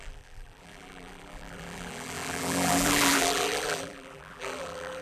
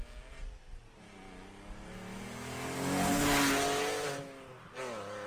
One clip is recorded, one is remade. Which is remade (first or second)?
first